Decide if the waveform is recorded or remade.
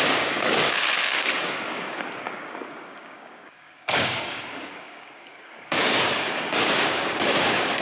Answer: remade